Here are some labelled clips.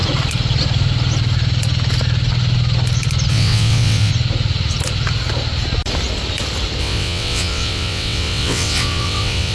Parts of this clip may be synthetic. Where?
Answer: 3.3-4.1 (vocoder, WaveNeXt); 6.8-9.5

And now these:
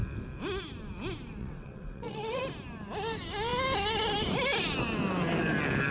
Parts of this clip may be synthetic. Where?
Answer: 1.4-2.4 (vocoder, WaveNeXt)

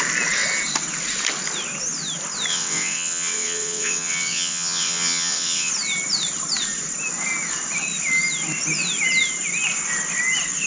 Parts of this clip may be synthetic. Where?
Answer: 2.5-5.7 (vocoder, WaveNeXt)

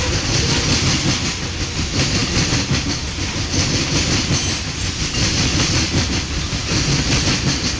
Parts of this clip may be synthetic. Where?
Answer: none

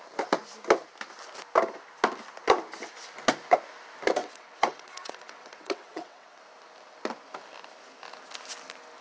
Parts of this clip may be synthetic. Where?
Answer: 4.2-6.4 (vocoder, WaveNeXt)

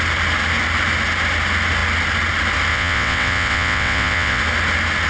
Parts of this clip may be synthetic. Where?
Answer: 2.7-4.4 (vocoder, WaveNeXt)

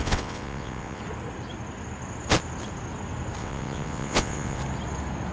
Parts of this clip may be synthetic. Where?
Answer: 0.0-1.0 (vocoder, WaveNeXt); 3.4-4.6